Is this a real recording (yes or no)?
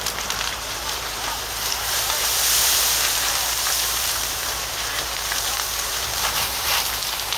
no